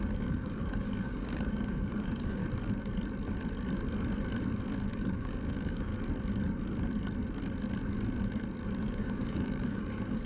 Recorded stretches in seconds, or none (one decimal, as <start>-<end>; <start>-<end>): 2.4-4.9; 5.9-8.8